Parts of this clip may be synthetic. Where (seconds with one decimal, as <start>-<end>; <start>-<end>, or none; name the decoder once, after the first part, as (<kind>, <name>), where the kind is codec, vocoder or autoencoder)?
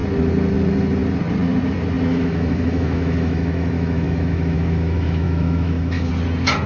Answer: 2.1-6.1 (autoencoder, DAC-VAE)